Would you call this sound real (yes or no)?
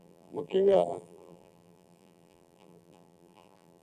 no